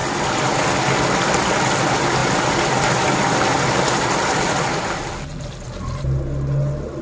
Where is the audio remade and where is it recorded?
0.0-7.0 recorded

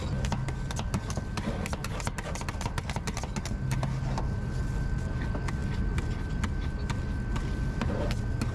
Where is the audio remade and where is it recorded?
0.0-8.5 recorded

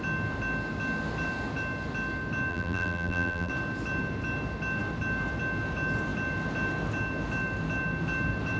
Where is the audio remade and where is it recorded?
0.0-2.5 recorded; 2.5-3.5 remade; 3.5-8.6 recorded